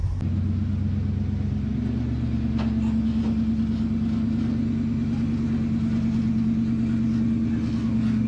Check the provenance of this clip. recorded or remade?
recorded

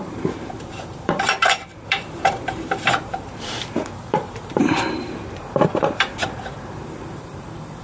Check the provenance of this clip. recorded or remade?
remade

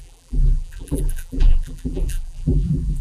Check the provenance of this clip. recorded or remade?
remade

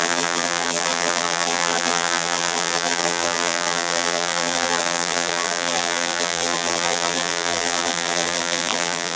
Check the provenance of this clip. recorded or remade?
remade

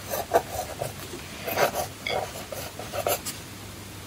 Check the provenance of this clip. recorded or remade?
recorded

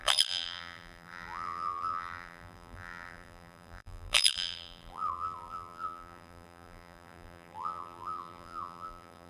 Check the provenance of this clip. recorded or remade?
remade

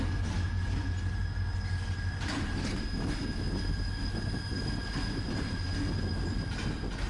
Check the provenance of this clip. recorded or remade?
recorded